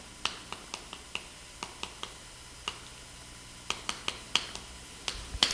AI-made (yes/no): no